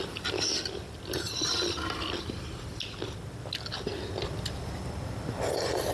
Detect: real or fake real